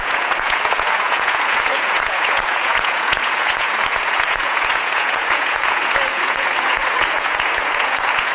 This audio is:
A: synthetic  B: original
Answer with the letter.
A